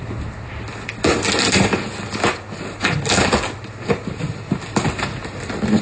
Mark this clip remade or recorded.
recorded